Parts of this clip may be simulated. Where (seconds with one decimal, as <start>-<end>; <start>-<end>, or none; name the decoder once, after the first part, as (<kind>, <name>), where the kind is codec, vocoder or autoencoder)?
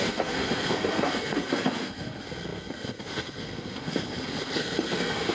0.0-5.3 (codec, SNAC)